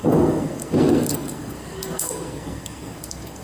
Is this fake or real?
fake